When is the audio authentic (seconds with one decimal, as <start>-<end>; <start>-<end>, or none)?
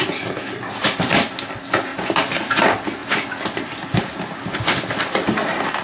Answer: 0.0-1.9; 2.6-5.8